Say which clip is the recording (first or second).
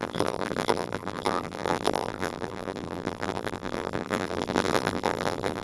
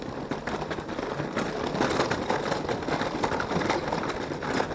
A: second